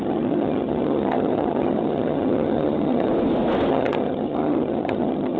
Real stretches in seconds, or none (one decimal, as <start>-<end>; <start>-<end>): 3.1-3.7